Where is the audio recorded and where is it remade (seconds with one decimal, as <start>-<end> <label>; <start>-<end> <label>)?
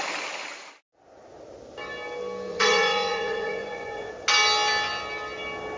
0.0-2.5 recorded; 2.5-4.1 remade; 4.1-5.8 recorded